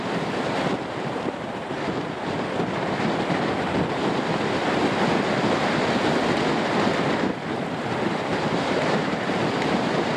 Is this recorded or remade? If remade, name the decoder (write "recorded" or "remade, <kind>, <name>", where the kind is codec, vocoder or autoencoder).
recorded